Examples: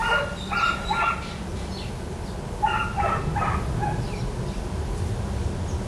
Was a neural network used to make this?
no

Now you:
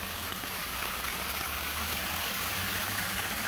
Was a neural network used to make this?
yes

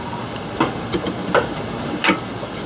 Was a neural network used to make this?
no